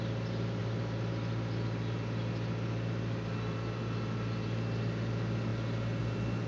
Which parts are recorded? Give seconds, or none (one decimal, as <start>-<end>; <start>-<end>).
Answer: 0.0-6.5